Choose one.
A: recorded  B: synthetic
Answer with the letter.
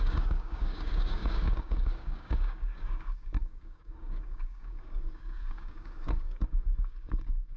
B